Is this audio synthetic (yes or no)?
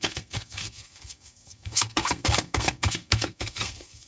yes